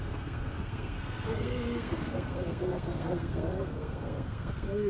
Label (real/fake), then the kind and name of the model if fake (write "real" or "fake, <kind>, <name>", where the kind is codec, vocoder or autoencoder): fake, codec, SNAC